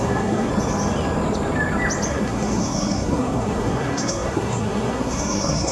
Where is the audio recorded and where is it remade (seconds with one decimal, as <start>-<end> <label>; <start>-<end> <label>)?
0.0-0.5 remade; 0.5-2.1 recorded; 2.1-5.7 remade